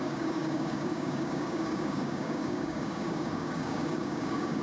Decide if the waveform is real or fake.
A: fake